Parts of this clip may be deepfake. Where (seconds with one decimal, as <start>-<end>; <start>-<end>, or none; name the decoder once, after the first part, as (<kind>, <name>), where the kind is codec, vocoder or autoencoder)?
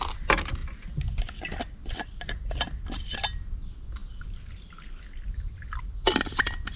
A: none